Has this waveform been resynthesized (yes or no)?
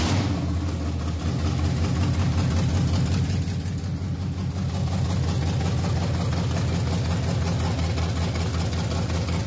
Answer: no